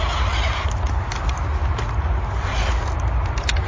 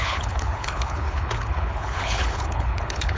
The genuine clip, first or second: first